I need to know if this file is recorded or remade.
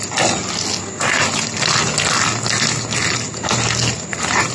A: recorded